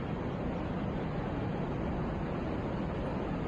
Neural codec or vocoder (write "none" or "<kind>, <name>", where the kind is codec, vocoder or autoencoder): none